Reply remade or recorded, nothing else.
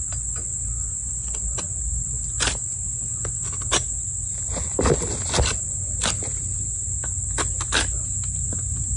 recorded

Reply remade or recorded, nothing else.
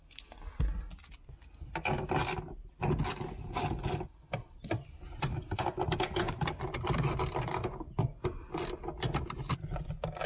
recorded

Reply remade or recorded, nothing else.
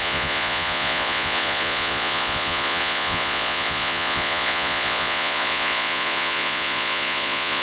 remade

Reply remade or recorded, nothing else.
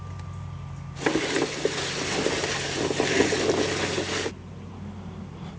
recorded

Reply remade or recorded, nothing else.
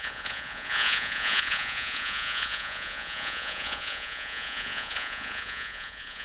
remade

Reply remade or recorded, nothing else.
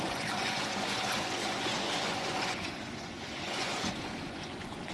remade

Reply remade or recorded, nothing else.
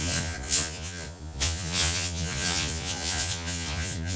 remade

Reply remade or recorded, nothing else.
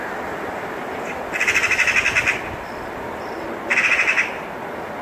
recorded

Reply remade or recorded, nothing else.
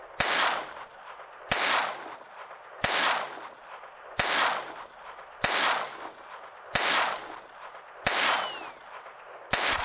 recorded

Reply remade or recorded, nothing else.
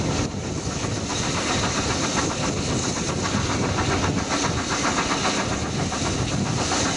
recorded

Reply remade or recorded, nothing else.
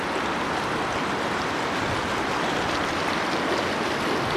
recorded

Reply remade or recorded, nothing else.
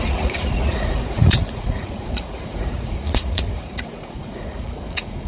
remade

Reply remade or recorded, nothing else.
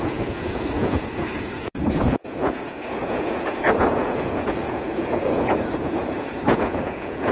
remade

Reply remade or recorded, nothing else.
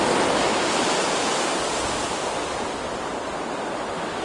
recorded